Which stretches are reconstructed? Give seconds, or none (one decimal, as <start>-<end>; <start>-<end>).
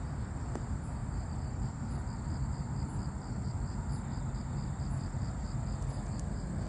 none